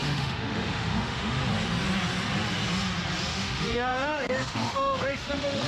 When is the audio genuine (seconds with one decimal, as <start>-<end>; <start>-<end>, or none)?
1.4-3.3